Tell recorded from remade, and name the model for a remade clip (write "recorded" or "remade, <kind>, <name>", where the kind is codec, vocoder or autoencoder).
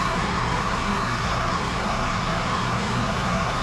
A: remade, codec, SNAC